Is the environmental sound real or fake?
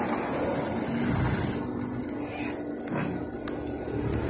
real